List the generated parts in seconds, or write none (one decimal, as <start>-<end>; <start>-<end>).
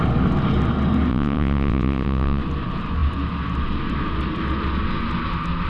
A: 1.1-2.4